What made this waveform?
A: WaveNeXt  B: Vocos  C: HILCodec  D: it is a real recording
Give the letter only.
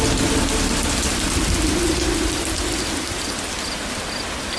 D